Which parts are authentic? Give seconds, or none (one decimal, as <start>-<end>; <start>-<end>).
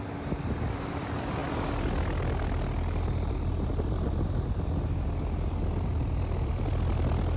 0.0-7.4